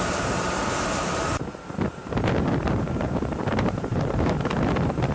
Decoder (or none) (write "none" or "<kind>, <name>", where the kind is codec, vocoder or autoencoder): vocoder, BigVGAN v2